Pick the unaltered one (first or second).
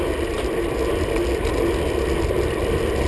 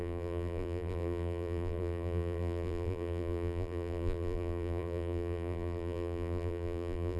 first